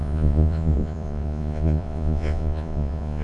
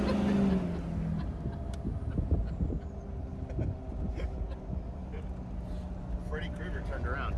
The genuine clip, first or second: second